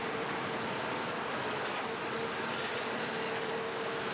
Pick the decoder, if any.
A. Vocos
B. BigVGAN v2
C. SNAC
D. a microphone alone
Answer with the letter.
B